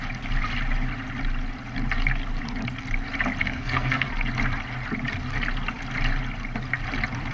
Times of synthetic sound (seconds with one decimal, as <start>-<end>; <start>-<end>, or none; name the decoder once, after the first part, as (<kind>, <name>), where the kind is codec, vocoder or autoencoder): 3.4-4.1 (codec, SNAC)